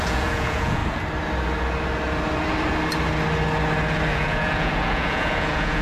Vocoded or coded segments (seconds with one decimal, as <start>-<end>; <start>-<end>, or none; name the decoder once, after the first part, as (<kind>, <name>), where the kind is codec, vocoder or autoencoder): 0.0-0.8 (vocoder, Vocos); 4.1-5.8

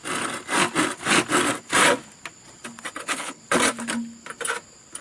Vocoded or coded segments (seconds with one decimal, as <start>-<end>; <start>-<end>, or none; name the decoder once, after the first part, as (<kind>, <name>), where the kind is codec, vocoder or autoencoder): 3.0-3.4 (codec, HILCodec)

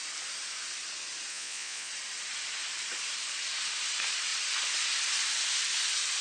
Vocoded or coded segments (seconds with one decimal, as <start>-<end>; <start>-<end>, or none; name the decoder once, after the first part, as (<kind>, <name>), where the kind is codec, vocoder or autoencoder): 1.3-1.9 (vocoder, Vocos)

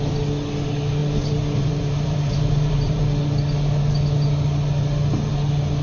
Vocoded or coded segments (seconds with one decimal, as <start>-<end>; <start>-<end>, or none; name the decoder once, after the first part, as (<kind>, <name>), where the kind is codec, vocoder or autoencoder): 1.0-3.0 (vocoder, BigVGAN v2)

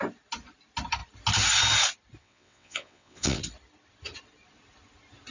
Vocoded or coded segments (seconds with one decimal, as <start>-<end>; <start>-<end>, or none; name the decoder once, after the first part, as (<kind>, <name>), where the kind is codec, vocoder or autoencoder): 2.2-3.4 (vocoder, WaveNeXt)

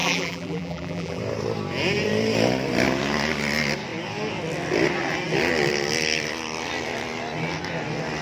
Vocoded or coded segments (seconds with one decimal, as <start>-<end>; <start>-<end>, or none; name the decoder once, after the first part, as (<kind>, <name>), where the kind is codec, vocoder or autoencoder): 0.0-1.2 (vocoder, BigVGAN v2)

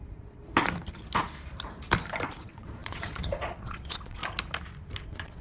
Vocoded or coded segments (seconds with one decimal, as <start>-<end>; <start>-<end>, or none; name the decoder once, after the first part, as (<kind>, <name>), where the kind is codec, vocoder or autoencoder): 0.0-0.4 (vocoder, Vocos); 2.4-4.2; 5.0-5.4